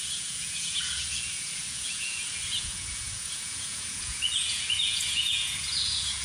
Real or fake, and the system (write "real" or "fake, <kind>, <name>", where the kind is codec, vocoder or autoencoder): fake, vocoder, Vocos